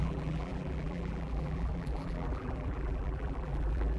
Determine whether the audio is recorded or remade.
remade